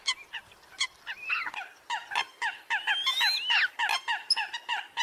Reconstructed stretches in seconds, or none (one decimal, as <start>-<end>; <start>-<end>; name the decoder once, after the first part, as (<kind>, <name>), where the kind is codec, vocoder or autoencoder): none